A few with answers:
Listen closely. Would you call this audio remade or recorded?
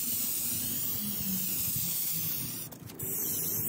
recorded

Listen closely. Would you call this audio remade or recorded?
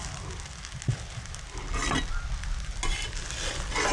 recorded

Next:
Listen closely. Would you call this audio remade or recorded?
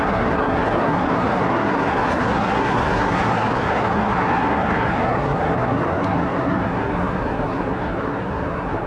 remade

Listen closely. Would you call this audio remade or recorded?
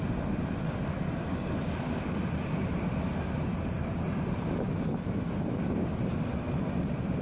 recorded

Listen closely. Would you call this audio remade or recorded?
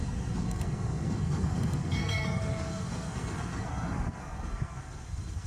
remade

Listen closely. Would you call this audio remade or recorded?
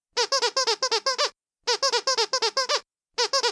recorded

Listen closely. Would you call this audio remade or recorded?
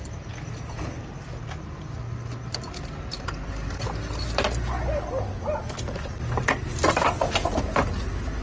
recorded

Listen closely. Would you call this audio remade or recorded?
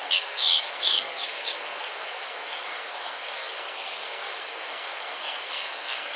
remade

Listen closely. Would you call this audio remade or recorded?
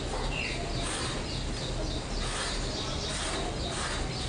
recorded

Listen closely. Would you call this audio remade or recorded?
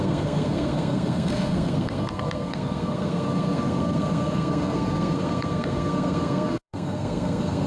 remade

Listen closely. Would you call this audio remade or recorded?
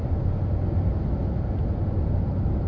recorded